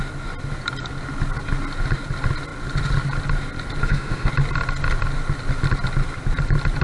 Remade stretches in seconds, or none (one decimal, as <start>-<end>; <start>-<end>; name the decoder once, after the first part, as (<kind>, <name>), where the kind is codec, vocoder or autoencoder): 3.8-4.3 (autoencoder, DAC-VAE)